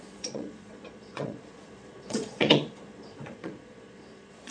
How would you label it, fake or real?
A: fake